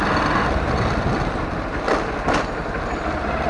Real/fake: real